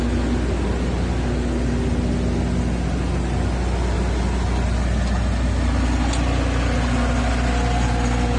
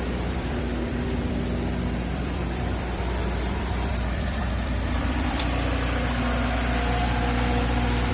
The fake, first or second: second